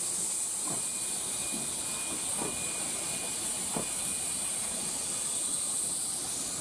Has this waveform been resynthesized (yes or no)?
no